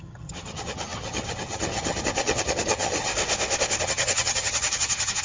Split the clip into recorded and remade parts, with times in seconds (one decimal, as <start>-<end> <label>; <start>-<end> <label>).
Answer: 0.0-3.1 remade; 3.1-3.8 recorded; 3.8-5.2 remade